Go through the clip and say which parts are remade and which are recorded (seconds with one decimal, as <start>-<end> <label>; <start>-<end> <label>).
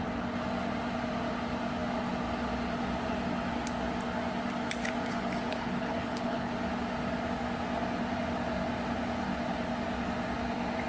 0.0-5.5 recorded; 5.5-6.5 remade; 6.5-10.9 recorded